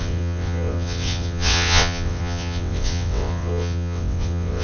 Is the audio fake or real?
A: fake